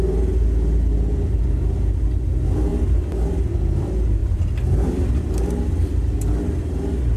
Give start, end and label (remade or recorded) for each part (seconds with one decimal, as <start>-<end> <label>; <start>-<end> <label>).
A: 0.0-4.2 recorded; 4.2-6.4 remade; 6.4-7.2 recorded